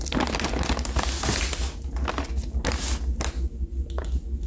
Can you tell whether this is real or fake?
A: real